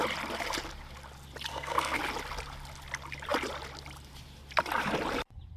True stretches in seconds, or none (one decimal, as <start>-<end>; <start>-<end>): 0.0-1.5; 2.0-5.6